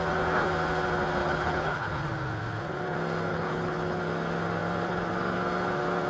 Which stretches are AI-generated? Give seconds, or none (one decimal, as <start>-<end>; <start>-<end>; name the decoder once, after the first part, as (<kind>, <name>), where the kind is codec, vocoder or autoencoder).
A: 1.2-2.1 (codec, HILCodec); 3.3-4.0